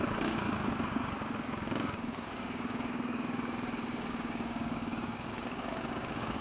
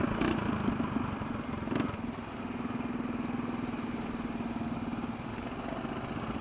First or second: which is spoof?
first